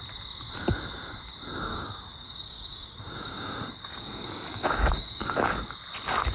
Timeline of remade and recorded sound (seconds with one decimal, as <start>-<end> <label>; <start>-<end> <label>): 0.0-1.7 recorded; 1.7-5.5 remade; 5.5-6.3 recorded